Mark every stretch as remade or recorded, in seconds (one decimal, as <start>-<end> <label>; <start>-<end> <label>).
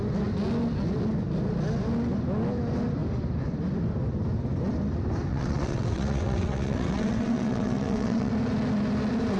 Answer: 0.0-5.3 recorded; 5.3-8.3 remade; 8.3-9.4 recorded